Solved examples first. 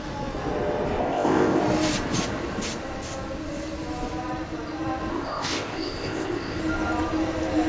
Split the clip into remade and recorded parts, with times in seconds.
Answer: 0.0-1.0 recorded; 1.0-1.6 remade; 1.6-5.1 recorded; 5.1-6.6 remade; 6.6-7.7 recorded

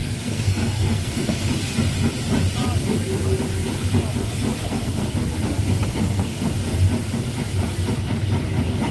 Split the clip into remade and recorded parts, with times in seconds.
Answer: 0.0-1.6 remade; 1.6-4.6 recorded; 4.6-5.1 remade; 5.1-5.9 recorded; 5.9-6.5 remade; 6.5-8.9 recorded

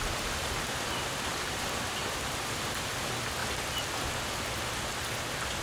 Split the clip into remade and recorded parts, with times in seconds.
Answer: 0.0-3.4 recorded; 3.4-4.1 remade; 4.1-5.6 recorded

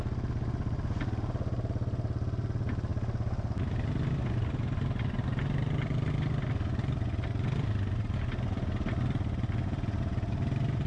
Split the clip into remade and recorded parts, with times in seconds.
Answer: 0.0-10.9 recorded